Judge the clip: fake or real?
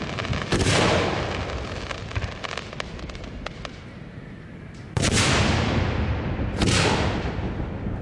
real